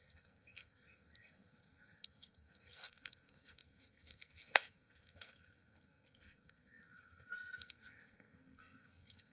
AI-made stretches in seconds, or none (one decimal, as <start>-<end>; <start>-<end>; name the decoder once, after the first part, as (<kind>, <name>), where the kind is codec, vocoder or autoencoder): 0.0-9.3 (codec, SNAC)